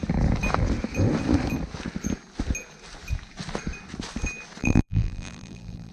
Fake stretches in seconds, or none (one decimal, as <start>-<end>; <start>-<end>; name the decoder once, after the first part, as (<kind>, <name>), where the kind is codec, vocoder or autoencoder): 4.6-5.9 (vocoder, BigVGAN v2)